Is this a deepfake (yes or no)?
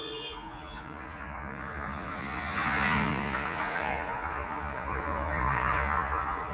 yes